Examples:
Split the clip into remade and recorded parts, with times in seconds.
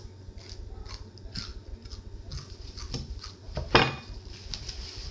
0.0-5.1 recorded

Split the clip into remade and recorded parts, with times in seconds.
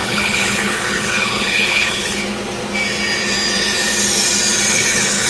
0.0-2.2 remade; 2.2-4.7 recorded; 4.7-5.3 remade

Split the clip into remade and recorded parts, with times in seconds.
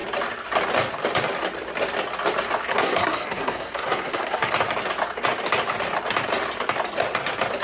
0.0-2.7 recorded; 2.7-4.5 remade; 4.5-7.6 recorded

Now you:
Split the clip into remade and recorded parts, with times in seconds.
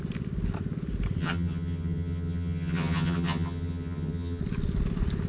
0.0-1.2 recorded; 1.2-4.4 remade; 4.4-5.3 recorded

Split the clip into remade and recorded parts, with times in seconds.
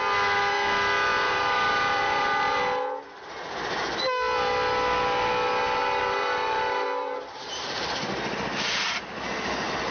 0.0-1.1 recorded; 1.1-2.6 remade; 2.6-5.6 recorded; 5.6-7.9 remade; 7.9-9.9 recorded